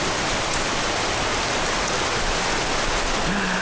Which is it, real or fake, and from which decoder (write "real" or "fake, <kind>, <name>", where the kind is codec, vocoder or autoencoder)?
real